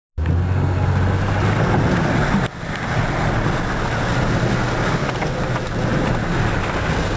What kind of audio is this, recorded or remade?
recorded